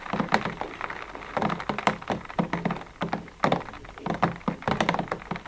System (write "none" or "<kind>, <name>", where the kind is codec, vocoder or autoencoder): none